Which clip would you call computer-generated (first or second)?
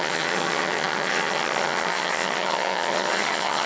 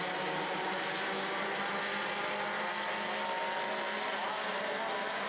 first